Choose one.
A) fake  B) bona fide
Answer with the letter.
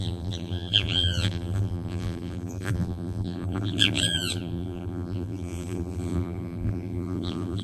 A